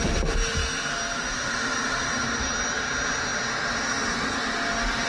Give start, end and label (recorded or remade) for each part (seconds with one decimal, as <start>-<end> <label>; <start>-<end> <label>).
0.0-5.1 recorded